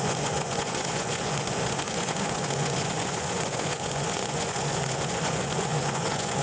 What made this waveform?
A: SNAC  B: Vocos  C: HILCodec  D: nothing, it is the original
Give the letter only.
B